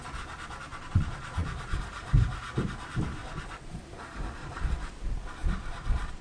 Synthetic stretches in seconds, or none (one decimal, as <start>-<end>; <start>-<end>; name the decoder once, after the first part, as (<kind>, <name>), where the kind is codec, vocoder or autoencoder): 0.7-1.8 (vocoder, Vocos); 3.2-3.8; 4.4-5.0; 5.4-6.2